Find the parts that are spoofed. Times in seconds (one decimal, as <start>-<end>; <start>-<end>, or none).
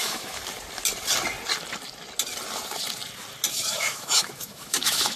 0.0-0.4; 3.5-5.2